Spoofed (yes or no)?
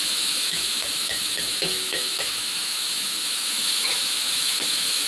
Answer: yes